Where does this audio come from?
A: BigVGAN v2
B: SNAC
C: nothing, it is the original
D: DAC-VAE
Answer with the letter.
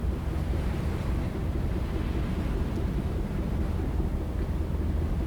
C